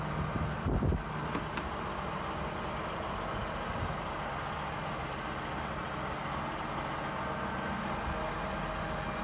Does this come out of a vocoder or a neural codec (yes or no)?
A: no